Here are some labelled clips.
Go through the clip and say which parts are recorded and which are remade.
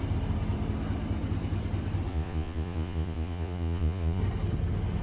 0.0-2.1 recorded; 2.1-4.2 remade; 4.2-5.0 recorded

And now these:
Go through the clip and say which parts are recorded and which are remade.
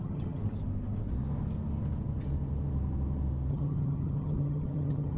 0.0-0.4 remade; 0.4-3.5 recorded; 3.5-5.2 remade